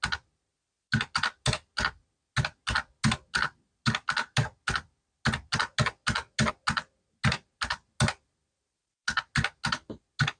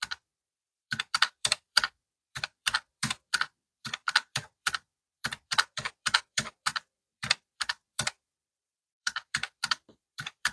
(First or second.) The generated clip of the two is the second